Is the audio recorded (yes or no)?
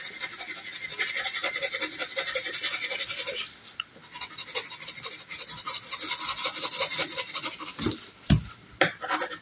yes